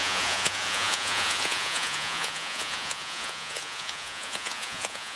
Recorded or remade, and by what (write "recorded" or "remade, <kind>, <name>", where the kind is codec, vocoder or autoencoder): remade, vocoder, Vocos